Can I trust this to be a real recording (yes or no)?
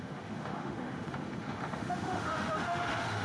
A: no